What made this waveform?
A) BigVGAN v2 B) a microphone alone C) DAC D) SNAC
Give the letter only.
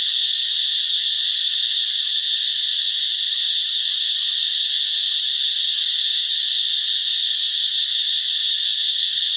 A